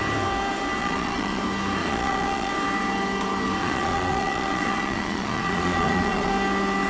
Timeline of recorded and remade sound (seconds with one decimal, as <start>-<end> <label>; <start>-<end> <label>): 0.0-0.8 recorded; 0.8-1.4 remade; 1.4-1.8 recorded; 1.8-2.5 remade; 2.5-3.6 recorded; 3.6-6.3 remade; 6.3-6.9 recorded